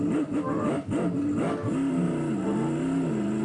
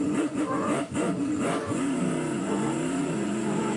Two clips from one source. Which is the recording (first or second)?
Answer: first